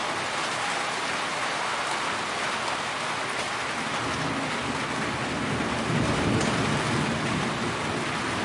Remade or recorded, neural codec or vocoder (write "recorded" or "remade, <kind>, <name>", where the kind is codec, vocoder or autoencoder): recorded